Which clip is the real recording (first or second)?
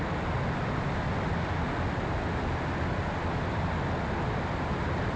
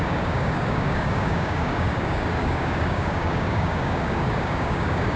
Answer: first